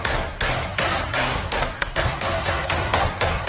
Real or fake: fake